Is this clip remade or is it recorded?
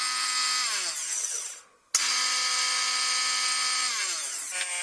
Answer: recorded